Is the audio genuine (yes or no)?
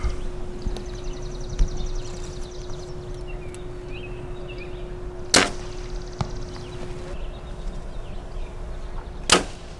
yes